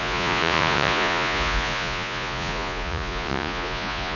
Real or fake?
fake